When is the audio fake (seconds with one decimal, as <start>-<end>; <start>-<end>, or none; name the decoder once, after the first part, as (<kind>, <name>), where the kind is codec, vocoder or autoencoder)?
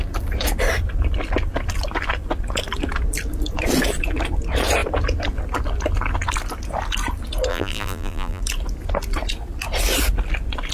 7.5-8.4 (vocoder, BigVGAN v2)